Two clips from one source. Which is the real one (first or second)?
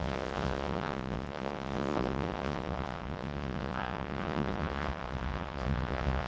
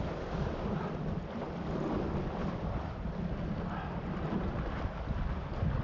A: second